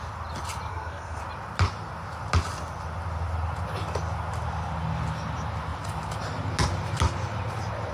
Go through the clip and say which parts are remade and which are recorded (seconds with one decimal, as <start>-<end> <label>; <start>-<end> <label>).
0.0-0.7 recorded; 0.7-1.2 remade; 1.2-7.9 recorded